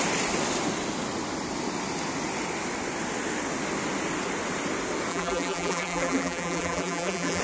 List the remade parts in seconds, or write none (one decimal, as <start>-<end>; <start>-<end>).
5.1-7.4